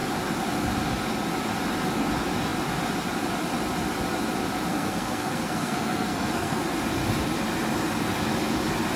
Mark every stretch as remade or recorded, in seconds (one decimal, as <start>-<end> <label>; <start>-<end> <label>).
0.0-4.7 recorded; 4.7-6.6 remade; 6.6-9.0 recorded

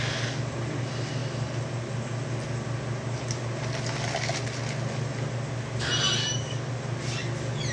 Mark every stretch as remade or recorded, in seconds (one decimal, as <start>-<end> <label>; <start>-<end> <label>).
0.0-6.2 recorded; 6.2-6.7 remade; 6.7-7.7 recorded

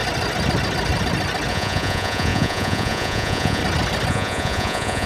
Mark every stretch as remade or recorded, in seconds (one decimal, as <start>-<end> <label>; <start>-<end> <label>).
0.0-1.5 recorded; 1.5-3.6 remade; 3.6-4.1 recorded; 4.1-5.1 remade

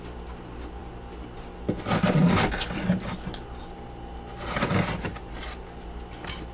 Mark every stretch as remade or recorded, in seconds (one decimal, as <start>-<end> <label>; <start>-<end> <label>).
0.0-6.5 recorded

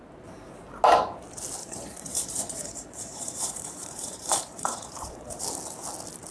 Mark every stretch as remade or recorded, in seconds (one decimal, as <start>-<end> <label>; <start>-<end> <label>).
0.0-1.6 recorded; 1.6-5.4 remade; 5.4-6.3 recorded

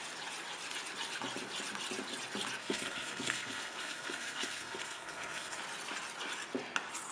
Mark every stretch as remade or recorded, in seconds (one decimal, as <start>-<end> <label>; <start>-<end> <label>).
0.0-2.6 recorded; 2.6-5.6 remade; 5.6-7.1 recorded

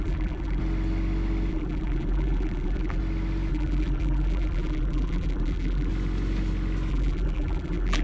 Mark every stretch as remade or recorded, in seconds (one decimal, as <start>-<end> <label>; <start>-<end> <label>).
0.0-0.6 remade; 0.6-1.5 recorded; 1.5-3.0 remade; 3.0-3.5 recorded; 3.5-5.9 remade; 5.9-6.9 recorded; 6.9-8.0 remade